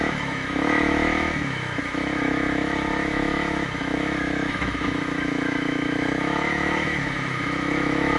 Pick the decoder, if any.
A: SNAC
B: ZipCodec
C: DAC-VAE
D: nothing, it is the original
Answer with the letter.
C